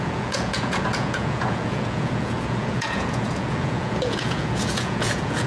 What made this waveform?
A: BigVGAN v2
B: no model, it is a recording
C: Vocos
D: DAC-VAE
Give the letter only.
C